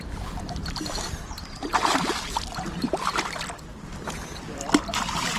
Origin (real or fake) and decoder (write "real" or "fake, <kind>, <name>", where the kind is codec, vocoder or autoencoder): fake, vocoder, BigVGAN v2